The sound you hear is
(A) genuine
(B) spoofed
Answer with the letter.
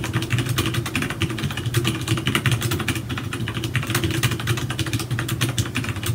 A